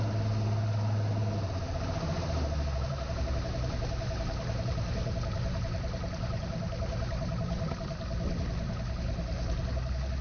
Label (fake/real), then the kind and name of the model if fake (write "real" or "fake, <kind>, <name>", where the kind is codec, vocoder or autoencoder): real